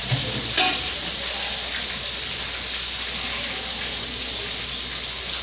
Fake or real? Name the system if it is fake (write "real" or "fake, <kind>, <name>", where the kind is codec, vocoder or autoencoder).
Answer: real